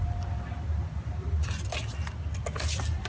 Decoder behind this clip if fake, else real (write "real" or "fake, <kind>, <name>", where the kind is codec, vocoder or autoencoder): real